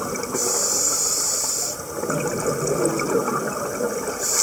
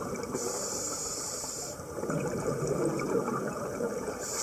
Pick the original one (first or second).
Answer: first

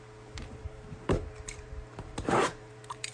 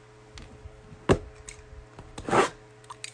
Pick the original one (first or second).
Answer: second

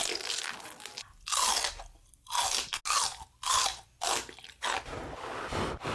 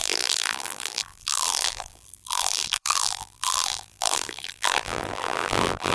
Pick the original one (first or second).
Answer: first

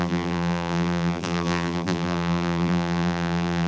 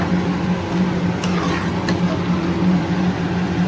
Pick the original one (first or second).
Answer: second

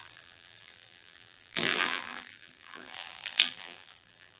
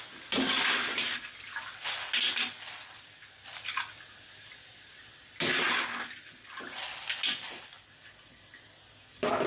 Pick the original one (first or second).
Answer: second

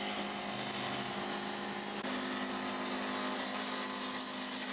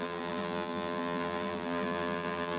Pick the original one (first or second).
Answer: first